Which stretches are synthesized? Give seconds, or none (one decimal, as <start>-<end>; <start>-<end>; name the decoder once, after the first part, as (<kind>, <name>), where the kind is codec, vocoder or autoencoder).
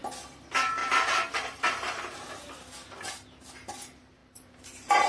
0.8-2.3 (vocoder, BigVGAN v2); 4.2-5.1